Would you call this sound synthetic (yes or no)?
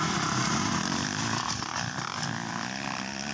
no